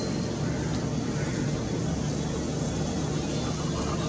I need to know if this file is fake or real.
real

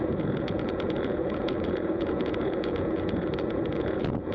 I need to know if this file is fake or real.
fake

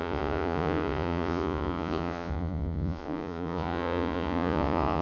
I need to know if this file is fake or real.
fake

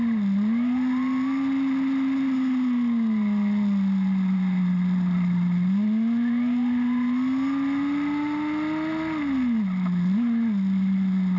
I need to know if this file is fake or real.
real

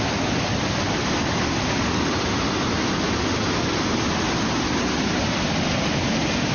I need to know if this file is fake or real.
real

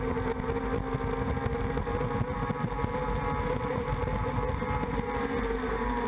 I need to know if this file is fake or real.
real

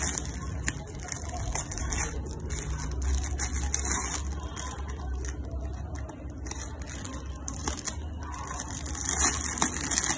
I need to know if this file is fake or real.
real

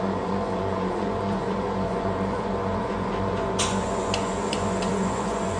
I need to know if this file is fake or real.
fake